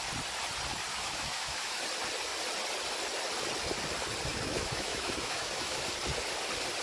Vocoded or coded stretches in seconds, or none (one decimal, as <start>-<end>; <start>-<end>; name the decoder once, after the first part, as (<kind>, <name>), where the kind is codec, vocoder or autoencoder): 0.9-1.8 (autoencoder, DAC-VAE); 4.3-5.8